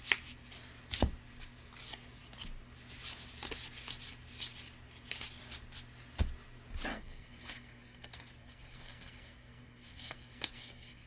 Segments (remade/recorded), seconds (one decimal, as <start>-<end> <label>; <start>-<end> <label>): 0.0-6.9 recorded; 6.9-11.1 remade